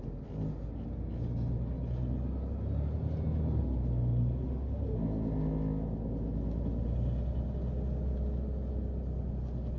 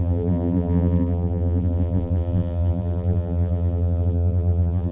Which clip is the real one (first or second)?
first